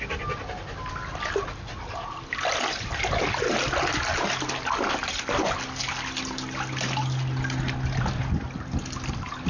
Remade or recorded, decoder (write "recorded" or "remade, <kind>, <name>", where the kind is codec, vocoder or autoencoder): recorded